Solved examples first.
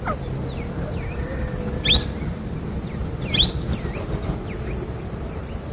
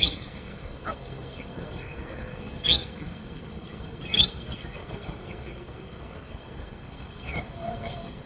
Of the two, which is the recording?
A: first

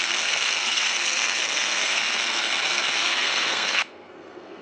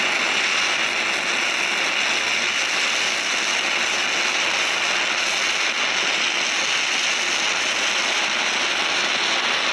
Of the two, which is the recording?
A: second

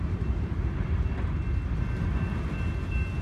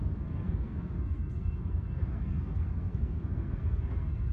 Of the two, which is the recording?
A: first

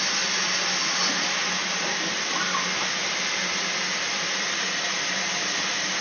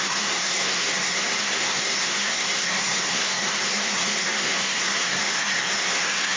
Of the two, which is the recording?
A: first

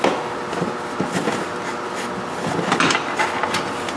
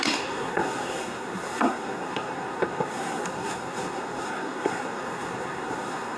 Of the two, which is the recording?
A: first